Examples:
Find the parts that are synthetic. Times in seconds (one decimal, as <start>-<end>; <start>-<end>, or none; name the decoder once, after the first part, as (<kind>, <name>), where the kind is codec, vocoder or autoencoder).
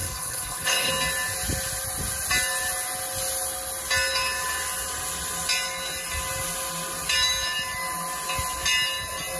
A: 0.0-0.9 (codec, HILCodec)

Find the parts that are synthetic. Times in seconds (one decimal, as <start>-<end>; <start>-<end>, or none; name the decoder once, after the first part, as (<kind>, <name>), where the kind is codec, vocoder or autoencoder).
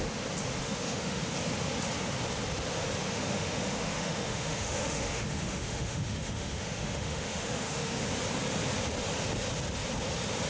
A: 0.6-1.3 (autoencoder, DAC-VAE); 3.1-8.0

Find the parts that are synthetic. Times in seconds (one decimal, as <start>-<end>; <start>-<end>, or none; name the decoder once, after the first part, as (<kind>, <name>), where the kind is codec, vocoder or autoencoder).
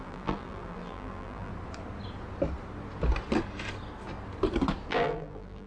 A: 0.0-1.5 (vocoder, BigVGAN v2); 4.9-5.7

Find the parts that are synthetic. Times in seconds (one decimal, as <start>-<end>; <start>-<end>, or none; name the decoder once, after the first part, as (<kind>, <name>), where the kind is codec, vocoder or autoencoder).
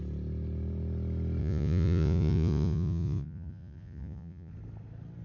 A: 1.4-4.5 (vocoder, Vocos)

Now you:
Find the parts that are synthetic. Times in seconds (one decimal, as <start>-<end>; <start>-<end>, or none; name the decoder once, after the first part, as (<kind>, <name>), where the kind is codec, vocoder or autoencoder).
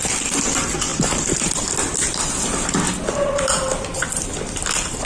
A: none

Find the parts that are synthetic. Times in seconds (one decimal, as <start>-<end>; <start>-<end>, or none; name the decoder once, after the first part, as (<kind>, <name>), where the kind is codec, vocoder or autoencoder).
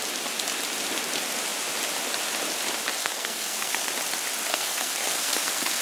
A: 3.0-3.9 (codec, SNAC); 4.5-5.8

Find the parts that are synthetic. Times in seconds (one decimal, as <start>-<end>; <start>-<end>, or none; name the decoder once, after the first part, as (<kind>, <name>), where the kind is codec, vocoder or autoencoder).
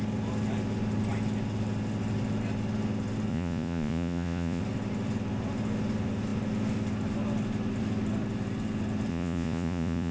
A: 3.3-4.6 (vocoder, Vocos); 9.1-10.1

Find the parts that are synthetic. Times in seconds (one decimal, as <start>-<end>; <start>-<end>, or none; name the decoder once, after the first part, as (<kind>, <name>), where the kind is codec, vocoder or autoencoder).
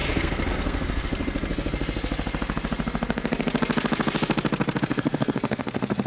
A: 0.0-1.1 (codec, SNAC); 4.8-6.1